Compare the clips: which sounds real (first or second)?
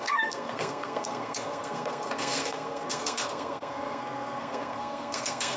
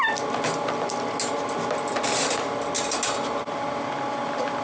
second